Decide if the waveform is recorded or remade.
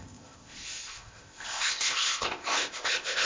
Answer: remade